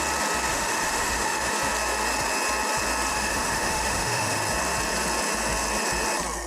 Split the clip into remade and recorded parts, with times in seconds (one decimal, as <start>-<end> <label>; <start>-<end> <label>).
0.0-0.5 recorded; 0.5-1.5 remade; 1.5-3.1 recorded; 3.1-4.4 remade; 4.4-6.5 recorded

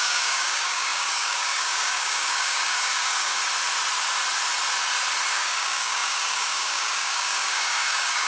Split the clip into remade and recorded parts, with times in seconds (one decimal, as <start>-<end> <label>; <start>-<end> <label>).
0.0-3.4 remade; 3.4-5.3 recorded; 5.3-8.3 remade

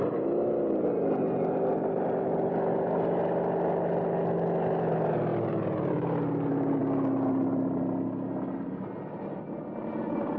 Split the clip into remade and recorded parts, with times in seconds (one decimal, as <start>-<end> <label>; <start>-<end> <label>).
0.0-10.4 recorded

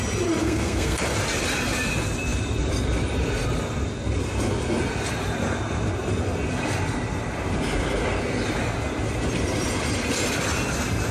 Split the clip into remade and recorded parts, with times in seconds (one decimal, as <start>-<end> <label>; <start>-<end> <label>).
0.0-0.4 recorded; 0.4-1.0 remade; 1.0-11.1 recorded